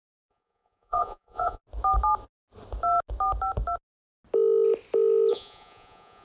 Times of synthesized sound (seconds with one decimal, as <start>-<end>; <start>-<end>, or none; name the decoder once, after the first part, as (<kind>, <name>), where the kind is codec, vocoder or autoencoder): 0.0-1.6 (vocoder, Vocos); 5.3-6.2